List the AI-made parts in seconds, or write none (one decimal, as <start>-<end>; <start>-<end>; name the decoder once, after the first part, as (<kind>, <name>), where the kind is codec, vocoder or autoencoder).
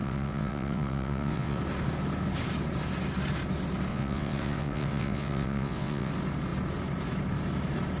0.0-1.6 (vocoder, WaveNeXt); 3.9-6.1